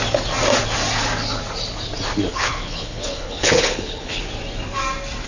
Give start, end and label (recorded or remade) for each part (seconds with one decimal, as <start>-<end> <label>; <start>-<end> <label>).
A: 0.0-2.3 recorded; 2.3-4.2 remade; 4.2-5.3 recorded